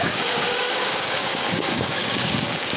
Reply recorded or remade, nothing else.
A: remade